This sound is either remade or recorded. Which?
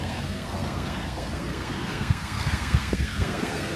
remade